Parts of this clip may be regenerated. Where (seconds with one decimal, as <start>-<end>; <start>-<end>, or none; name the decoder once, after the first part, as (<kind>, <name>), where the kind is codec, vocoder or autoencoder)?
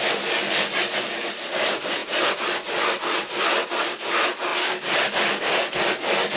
none